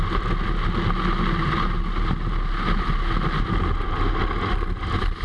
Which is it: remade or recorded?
recorded